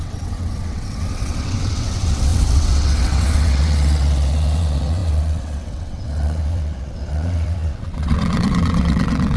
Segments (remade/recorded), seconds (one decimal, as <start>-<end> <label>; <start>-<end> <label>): 0.0-9.4 remade